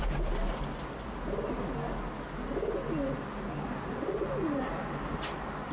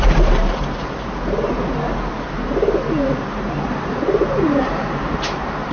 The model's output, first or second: second